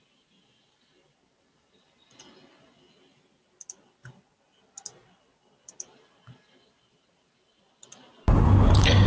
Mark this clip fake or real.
real